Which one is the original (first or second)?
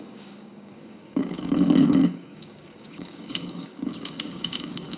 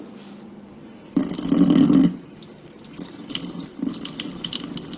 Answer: second